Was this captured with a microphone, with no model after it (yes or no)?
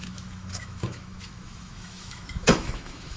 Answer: no